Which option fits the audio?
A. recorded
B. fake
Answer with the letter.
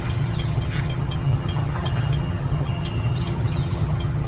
B